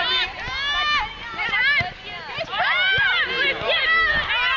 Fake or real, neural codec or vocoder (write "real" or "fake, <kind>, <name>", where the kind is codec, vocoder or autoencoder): real